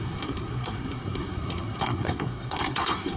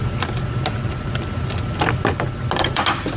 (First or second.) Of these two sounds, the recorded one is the second